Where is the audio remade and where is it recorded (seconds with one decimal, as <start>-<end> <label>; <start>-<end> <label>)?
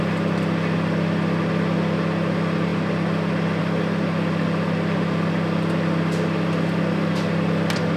0.0-8.0 recorded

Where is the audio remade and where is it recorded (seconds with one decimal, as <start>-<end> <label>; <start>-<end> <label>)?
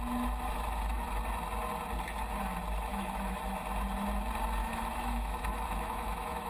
0.0-2.9 recorded; 2.9-3.4 remade; 3.4-4.6 recorded; 4.6-6.5 remade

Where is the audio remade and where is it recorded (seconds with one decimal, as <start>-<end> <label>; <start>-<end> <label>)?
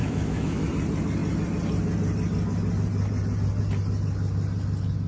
0.0-0.7 remade; 0.7-5.1 recorded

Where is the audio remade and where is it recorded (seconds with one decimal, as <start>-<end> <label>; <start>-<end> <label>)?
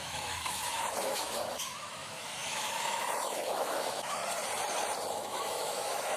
0.0-4.2 remade; 4.2-5.1 recorded; 5.1-6.2 remade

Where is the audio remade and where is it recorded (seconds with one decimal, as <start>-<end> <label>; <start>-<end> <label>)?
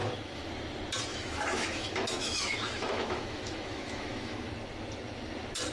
0.0-0.5 remade; 0.5-1.1 recorded; 1.1-4.5 remade; 4.5-5.7 recorded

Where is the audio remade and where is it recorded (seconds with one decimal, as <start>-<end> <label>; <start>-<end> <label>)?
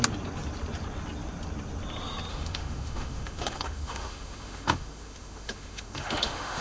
0.0-2.3 recorded; 2.3-6.6 remade